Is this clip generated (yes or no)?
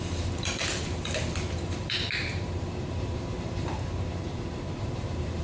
yes